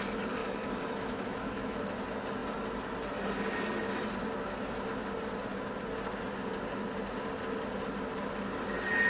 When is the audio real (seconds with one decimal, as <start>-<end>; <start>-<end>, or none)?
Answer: 0.0-0.4; 1.8-9.1